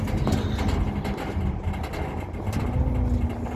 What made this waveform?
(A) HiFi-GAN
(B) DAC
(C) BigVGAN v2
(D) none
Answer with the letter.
D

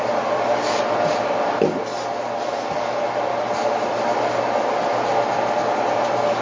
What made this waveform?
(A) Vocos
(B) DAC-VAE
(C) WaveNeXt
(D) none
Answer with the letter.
D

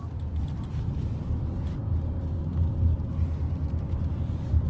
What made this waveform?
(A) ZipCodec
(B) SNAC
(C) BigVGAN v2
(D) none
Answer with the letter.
D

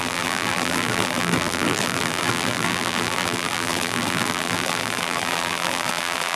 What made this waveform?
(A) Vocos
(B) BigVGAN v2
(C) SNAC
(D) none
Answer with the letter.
B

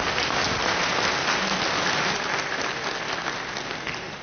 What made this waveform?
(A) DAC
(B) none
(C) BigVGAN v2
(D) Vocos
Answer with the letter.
B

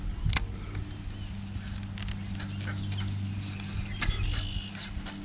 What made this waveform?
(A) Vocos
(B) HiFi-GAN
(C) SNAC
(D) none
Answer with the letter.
D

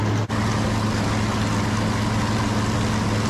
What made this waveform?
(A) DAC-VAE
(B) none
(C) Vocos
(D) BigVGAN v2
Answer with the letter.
B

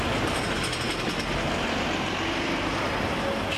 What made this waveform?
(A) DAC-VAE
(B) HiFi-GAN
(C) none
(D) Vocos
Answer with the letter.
C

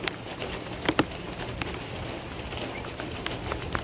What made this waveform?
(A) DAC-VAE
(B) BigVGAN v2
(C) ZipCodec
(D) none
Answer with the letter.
D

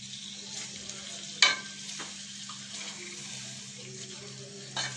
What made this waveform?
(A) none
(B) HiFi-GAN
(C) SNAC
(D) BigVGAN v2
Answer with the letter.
A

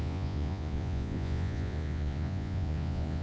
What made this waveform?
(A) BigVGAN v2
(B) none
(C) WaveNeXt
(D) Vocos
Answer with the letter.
D